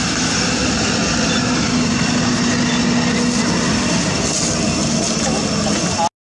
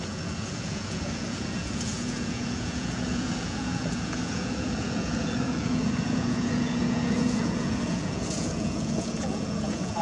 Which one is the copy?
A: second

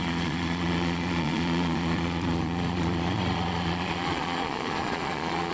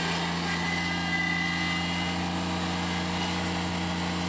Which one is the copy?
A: first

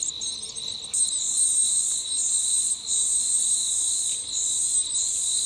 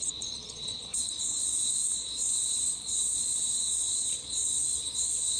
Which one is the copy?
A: second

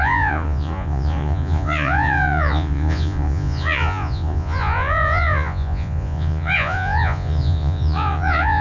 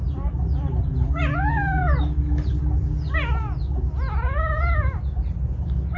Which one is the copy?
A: first